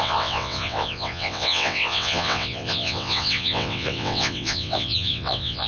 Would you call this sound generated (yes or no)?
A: yes